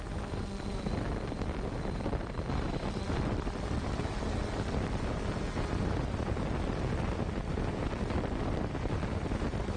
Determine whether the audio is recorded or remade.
recorded